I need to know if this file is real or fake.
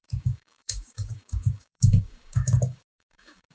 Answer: fake